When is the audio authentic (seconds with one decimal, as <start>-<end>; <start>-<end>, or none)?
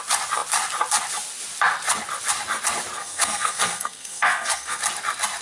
0.0-3.0; 4.8-5.4